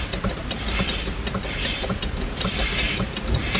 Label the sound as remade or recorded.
recorded